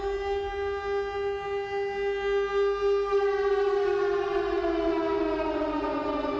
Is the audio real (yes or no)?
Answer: yes